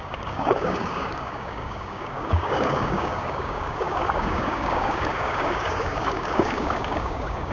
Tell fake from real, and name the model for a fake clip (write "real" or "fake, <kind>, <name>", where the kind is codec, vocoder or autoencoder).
fake, codec, DAC